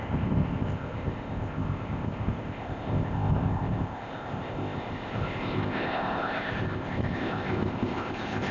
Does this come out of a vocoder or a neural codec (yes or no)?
yes